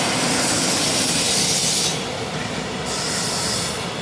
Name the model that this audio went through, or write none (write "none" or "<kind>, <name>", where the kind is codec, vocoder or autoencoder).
none